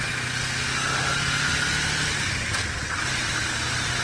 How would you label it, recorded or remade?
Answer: recorded